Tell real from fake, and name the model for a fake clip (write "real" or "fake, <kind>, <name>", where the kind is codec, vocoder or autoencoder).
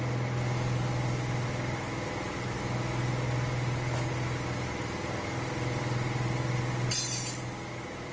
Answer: real